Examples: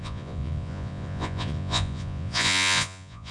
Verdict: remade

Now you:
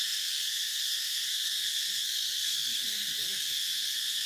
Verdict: remade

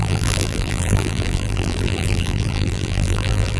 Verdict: remade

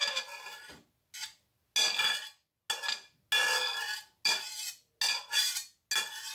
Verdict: recorded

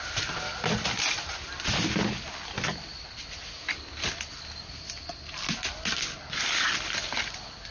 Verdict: recorded